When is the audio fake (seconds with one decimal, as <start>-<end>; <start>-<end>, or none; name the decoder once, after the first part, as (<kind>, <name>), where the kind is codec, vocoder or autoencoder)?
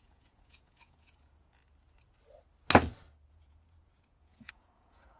0.0-1.6 (vocoder, Vocos); 3.3-5.2